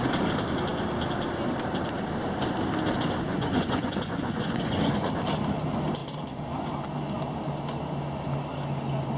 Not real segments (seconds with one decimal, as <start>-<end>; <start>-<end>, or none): 3.3-5.1